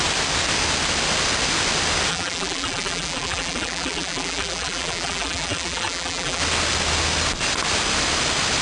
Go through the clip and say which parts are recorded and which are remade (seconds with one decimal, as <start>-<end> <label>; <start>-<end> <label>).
0.0-2.1 recorded; 2.1-6.4 remade; 6.4-8.6 recorded